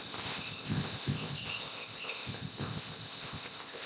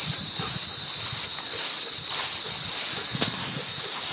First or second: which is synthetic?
first